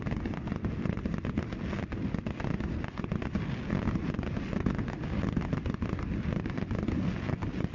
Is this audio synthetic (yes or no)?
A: no